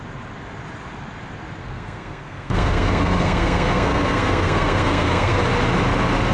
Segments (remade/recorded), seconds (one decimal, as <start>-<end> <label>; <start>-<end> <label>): 0.0-1.6 recorded; 1.6-5.4 remade; 5.4-6.3 recorded